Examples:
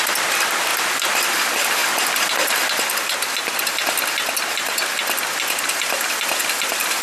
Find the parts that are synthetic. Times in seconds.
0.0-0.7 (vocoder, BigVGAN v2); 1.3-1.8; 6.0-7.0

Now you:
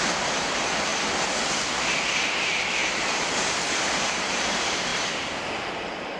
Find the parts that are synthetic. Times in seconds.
0.0-2.8 (vocoder, BigVGAN v2); 3.7-6.2

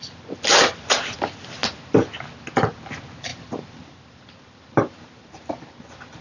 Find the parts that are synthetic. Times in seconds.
3.3-5.6 (vocoder, BigVGAN v2)